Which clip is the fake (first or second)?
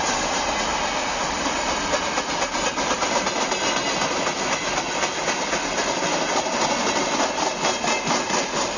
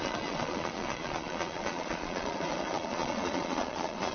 second